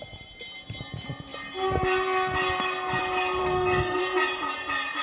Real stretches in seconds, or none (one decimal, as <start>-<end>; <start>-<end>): 0.0-3.4; 4.0-5.0